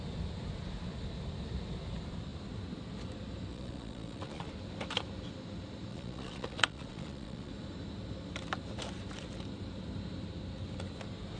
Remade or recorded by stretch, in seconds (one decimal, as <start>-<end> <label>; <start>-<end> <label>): 0.0-3.5 recorded; 3.5-4.5 remade; 4.5-5.9 recorded; 5.9-7.5 remade; 7.5-11.4 recorded